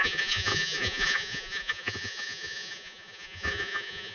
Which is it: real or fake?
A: fake